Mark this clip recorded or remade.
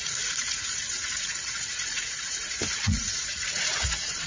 remade